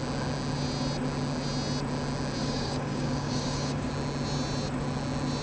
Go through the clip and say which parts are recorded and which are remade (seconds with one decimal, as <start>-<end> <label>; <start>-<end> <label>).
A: 0.0-2.4 recorded; 2.4-3.9 remade; 3.9-5.4 recorded